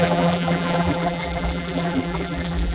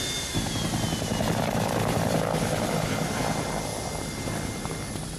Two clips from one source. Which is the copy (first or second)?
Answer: first